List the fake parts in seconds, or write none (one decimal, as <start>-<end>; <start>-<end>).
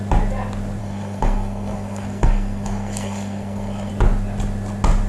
0.8-3.9